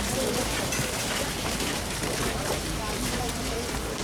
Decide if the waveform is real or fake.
fake